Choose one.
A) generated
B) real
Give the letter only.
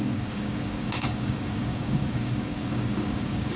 A